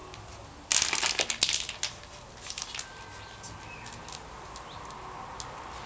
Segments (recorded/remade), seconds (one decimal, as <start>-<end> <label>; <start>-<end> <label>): 0.0-5.9 recorded